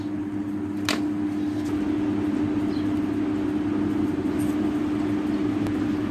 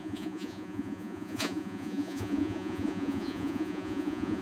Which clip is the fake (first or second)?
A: second